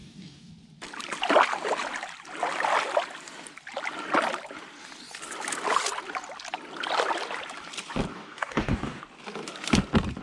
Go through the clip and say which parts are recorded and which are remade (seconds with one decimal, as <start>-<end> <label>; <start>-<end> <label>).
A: 0.0-0.5 remade; 0.5-8.1 recorded; 8.1-9.0 remade; 9.0-10.2 recorded